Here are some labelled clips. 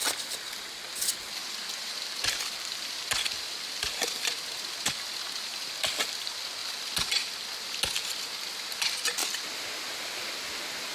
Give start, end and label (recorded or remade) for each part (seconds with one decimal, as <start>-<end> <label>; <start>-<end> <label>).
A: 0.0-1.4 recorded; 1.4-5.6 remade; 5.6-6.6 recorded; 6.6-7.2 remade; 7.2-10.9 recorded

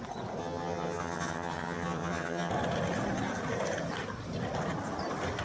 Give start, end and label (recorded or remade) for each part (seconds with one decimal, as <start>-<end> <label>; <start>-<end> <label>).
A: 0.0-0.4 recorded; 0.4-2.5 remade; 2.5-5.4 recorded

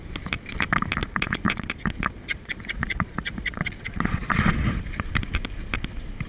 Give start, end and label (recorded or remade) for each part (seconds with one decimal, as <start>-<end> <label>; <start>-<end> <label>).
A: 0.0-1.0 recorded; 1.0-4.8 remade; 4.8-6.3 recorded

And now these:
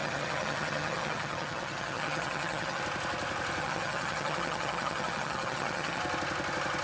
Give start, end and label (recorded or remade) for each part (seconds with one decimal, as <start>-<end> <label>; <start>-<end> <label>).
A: 0.0-2.8 remade; 2.8-3.6 recorded; 3.6-6.0 remade; 6.0-6.8 recorded

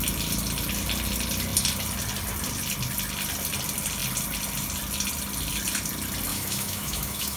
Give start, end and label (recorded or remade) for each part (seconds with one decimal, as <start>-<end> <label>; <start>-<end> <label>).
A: 0.0-6.3 recorded; 6.3-7.4 remade

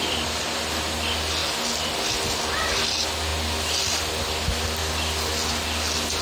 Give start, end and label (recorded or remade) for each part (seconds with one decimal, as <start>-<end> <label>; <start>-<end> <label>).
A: 0.0-6.2 recorded

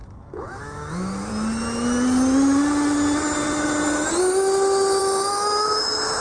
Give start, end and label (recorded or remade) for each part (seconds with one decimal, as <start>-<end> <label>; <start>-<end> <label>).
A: 0.0-1.3 remade; 1.3-5.0 recorded; 5.0-6.2 remade

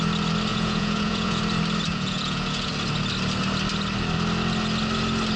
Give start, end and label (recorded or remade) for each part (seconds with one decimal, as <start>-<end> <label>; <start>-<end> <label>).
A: 0.0-0.5 recorded; 0.5-1.4 remade; 1.4-1.9 recorded; 1.9-2.7 remade; 2.7-5.4 recorded